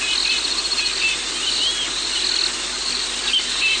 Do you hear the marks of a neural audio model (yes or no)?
no